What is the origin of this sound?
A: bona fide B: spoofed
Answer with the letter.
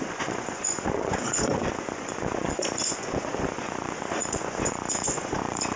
B